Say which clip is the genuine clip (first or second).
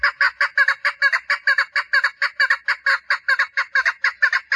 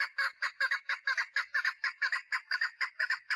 first